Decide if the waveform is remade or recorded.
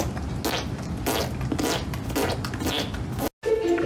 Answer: recorded